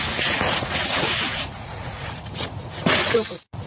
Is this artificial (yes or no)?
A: yes